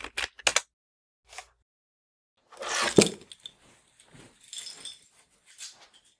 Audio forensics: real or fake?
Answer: real